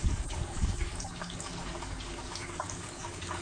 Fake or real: fake